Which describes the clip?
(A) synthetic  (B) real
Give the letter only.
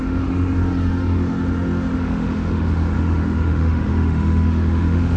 A